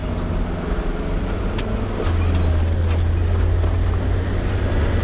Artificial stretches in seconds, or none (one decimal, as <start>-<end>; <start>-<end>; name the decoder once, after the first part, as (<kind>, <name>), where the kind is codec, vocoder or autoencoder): none